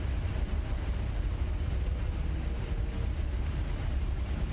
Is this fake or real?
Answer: real